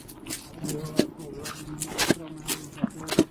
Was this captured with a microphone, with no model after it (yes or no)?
yes